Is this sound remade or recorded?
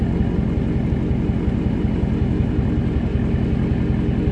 recorded